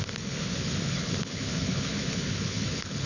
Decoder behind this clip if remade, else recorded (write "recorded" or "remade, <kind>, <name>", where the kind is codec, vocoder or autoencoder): remade, codec, HILCodec